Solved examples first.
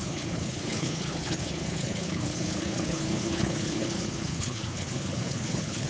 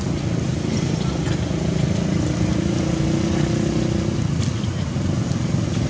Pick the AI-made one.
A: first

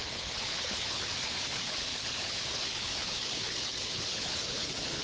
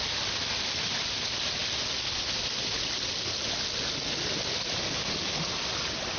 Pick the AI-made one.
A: first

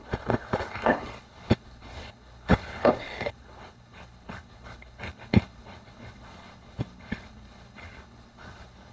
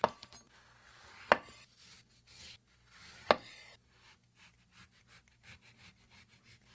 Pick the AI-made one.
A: first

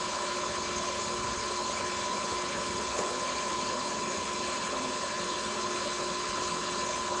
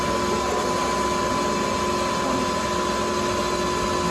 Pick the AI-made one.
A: first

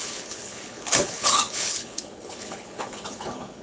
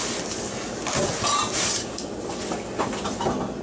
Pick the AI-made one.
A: first